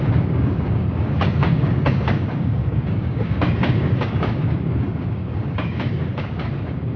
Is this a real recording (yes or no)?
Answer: no